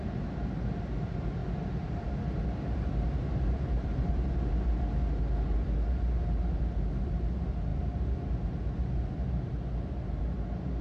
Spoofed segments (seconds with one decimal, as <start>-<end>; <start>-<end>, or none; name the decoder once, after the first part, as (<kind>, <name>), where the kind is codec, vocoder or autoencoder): 1.4-4.1 (vocoder, BigVGAN v2)